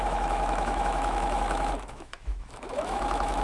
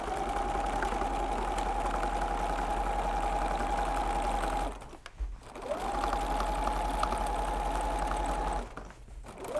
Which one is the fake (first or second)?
first